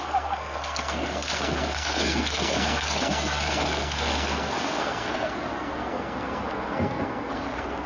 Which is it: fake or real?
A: fake